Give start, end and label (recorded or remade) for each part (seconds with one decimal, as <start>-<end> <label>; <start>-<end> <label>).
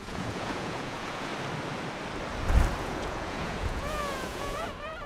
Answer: 0.0-1.3 remade; 1.3-2.8 recorded; 2.8-5.1 remade